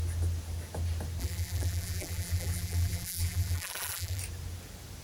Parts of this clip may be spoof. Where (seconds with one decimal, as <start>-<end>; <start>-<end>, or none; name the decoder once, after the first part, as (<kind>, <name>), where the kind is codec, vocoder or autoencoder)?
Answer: 1.2-4.2 (vocoder, BigVGAN v2)